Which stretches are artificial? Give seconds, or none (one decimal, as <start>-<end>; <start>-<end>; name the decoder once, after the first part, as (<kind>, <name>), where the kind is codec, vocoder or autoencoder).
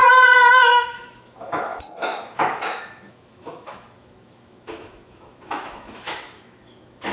0.5-7.1 (autoencoder, DAC-VAE)